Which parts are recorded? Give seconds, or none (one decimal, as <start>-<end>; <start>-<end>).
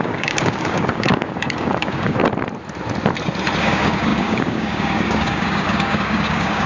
2.2-3.6